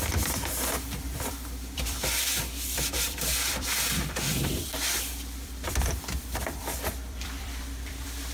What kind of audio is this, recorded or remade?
remade